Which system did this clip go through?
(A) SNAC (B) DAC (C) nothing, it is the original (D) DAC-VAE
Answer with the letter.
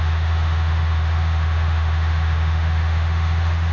D